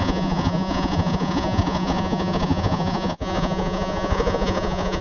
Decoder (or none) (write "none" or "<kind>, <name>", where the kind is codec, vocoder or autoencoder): vocoder, Vocos